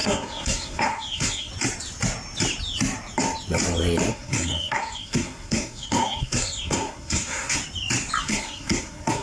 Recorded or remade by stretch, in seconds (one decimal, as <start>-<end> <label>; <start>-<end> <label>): 0.0-1.5 remade; 1.5-4.1 recorded; 4.1-7.6 remade; 7.6-8.2 recorded; 8.2-9.2 remade